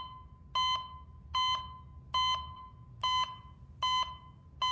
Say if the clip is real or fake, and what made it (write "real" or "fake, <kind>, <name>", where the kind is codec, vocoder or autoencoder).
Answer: real